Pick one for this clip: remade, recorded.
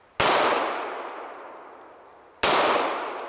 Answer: recorded